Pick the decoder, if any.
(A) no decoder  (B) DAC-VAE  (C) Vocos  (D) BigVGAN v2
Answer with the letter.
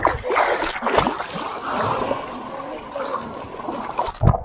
A